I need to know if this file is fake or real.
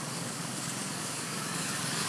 fake